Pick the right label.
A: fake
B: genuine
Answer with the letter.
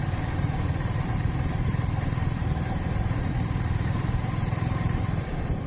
A